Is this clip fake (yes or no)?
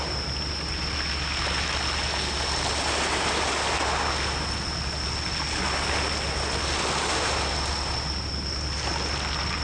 no